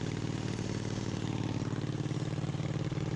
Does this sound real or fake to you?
fake